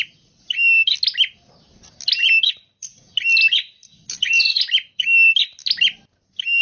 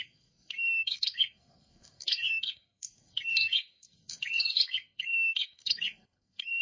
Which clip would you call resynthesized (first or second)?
second